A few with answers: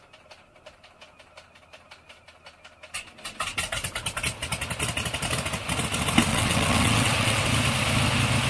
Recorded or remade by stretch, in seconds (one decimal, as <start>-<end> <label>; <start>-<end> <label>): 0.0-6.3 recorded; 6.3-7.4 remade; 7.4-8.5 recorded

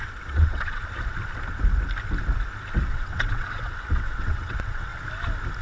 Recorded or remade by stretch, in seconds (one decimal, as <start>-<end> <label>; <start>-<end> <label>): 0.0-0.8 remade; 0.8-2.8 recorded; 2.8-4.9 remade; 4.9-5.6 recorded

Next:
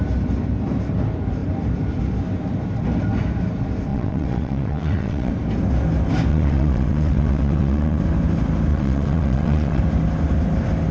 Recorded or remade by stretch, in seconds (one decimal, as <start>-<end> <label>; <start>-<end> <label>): 0.0-3.9 recorded; 3.9-5.3 remade; 5.3-6.3 recorded; 6.3-8.0 remade; 8.0-8.7 recorded; 8.7-9.8 remade; 9.8-10.9 recorded

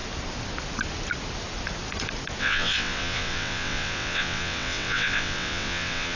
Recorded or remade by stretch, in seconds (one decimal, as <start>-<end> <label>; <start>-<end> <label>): 0.0-2.4 recorded; 2.4-6.2 remade

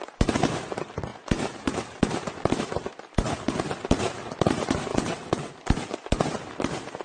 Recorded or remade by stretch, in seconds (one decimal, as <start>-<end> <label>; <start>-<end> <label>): 0.0-4.9 recorded; 4.9-5.5 remade; 5.5-7.0 recorded